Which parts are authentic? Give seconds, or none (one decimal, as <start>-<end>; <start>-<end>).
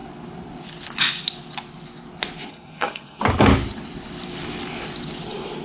0.0-2.5; 3.2-5.6